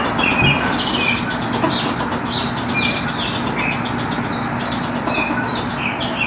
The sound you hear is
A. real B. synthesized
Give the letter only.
A